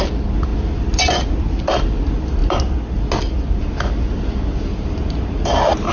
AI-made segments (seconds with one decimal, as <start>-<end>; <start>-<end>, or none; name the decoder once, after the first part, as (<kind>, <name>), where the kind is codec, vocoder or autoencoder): none